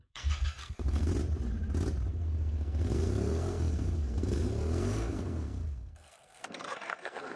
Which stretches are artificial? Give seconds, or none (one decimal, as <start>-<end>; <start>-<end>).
0.0-1.1; 2.1-7.4

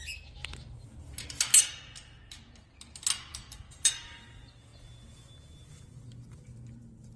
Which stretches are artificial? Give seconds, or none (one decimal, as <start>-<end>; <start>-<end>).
none

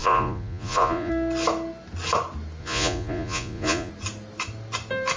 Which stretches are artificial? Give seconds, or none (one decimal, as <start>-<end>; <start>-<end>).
0.0-1.1; 2.6-3.9

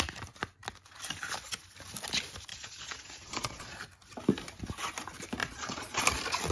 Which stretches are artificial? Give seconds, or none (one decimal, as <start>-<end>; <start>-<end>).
2.5-3.8; 5.4-6.0

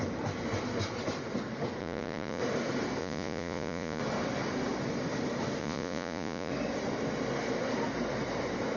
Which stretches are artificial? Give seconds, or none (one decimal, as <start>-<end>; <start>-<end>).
1.8-2.4; 3.0-4.0; 5.6-6.5

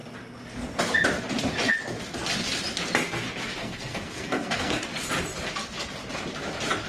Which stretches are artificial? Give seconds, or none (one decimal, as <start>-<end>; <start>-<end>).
3.6-4.8